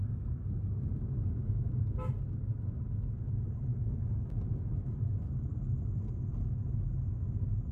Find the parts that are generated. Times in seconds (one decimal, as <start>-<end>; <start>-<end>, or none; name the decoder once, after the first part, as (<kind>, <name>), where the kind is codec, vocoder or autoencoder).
1.4-2.1 (autoencoder, DAC-VAE); 3.7-4.2